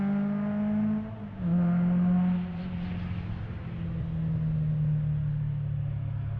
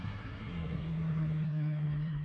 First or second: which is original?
first